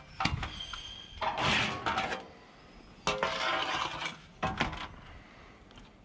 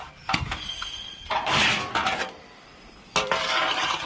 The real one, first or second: first